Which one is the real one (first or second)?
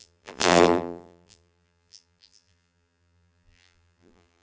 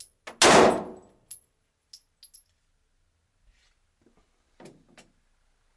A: second